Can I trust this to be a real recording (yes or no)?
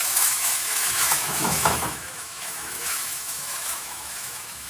no